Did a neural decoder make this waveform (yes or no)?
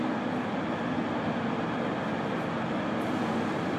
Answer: no